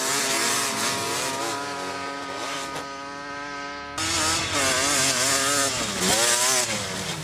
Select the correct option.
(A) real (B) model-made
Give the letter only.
A